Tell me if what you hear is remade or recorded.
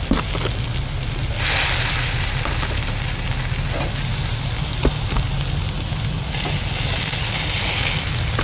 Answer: recorded